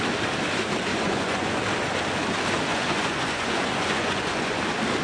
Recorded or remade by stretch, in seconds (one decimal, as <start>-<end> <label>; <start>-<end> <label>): 0.0-0.9 recorded; 0.9-1.6 remade; 1.6-2.7 recorded; 2.7-4.6 remade; 4.6-5.0 recorded